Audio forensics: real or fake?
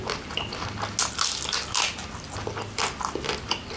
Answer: real